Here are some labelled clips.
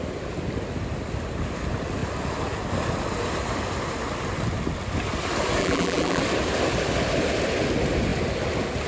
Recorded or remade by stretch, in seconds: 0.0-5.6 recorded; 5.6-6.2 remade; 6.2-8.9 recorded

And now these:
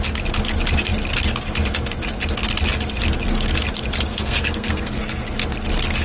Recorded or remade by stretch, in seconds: 0.0-4.1 recorded; 4.1-5.0 remade; 5.0-6.0 recorded

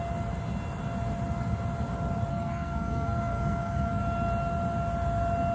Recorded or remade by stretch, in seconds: 0.0-2.3 recorded; 2.3-4.0 remade; 4.0-5.5 recorded

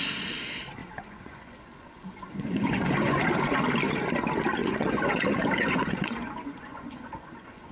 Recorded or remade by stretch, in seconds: 0.0-0.8 recorded; 0.8-3.2 remade; 3.2-4.6 recorded; 4.6-7.7 remade

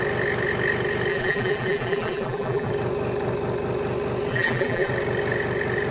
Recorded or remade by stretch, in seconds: 0.0-1.1 recorded; 1.1-2.7 remade; 2.7-4.3 recorded; 4.3-4.9 remade; 4.9-5.9 recorded

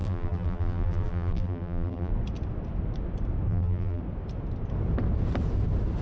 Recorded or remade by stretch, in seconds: 0.0-2.1 remade; 2.1-3.5 recorded; 3.5-4.0 remade; 4.0-6.0 recorded